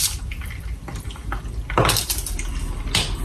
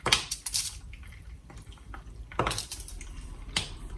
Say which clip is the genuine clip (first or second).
first